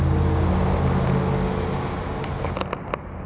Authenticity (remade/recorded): recorded